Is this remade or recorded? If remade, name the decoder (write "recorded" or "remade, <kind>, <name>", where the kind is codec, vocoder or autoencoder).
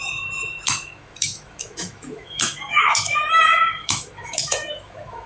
remade, autoencoder, DAC-VAE